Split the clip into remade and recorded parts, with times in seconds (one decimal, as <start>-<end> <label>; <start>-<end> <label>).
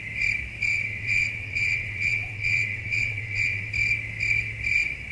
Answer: 0.0-0.7 recorded; 0.7-3.7 remade; 3.7-5.1 recorded